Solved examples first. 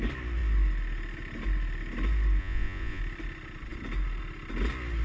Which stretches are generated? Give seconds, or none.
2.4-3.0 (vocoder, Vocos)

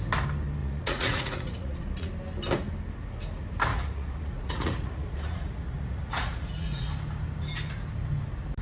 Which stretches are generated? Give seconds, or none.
0.6-2.1 (vocoder, Vocos); 3.7-6.9